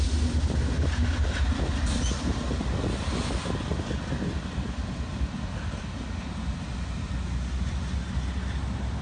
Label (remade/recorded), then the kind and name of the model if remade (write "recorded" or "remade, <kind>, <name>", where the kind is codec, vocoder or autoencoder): recorded